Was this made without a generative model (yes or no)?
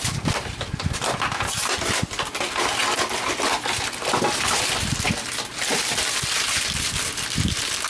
yes